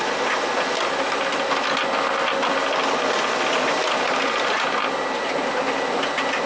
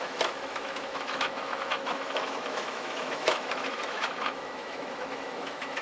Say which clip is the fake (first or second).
second